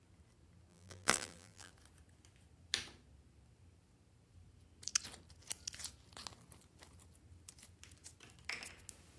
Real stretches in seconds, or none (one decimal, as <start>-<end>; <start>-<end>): 0.0-0.7; 1.7-9.2